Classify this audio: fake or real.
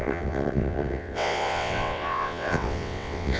fake